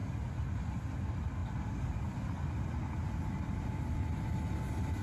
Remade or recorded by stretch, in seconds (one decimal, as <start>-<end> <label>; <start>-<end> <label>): 0.0-3.0 recorded; 3.0-4.2 remade; 4.2-5.0 recorded